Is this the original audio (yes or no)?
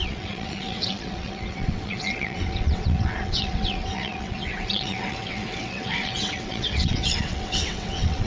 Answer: no